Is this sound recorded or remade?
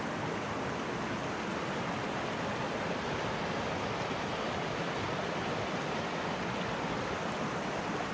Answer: recorded